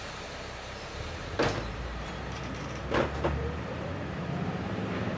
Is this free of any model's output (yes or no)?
no